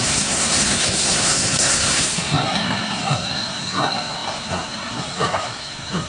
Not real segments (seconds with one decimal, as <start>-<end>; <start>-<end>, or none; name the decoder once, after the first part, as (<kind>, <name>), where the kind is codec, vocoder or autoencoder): 0.0-6.1 (codec, SNAC)